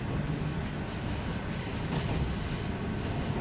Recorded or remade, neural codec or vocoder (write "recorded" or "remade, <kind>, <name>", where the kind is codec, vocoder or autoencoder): recorded